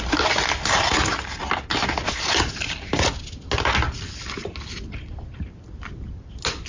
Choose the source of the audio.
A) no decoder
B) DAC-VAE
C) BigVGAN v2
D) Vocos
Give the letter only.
A